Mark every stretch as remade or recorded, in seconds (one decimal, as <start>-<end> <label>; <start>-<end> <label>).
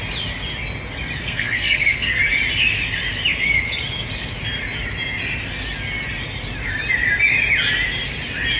0.0-1.2 recorded; 1.2-2.2 remade; 2.2-8.6 recorded